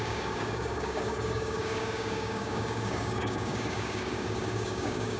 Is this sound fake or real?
fake